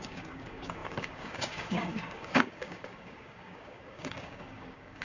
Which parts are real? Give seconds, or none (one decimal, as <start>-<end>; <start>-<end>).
none